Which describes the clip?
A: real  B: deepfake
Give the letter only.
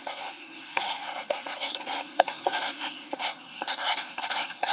B